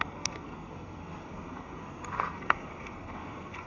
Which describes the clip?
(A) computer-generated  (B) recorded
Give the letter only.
A